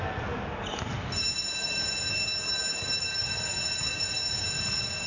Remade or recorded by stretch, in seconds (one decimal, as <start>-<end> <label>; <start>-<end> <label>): 0.0-3.2 recorded; 3.2-5.1 remade